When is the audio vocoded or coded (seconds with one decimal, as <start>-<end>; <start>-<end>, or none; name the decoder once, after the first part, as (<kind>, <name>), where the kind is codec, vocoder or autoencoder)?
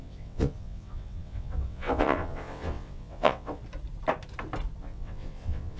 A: 0.0-3.6 (vocoder, WaveNeXt); 4.8-5.8